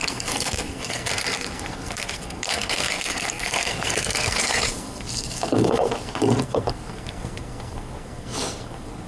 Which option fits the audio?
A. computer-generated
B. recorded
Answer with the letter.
A